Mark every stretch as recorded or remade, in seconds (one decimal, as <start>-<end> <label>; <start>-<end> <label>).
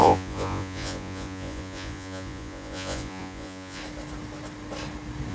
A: 0.0-3.8 remade; 3.8-5.3 recorded